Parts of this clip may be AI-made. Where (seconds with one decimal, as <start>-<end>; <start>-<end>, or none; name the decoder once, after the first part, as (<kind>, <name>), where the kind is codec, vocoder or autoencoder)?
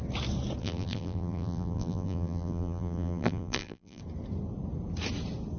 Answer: 0.6-4.0 (vocoder, BigVGAN v2)